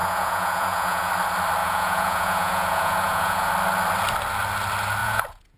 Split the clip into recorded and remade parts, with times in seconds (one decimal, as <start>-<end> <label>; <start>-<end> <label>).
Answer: 0.0-1.1 remade; 1.1-1.6 recorded; 1.6-3.5 remade; 3.5-5.0 recorded; 5.0-5.6 remade